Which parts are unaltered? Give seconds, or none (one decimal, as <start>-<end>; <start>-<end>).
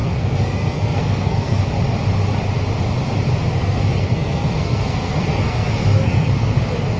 1.6-3.5; 6.6-7.0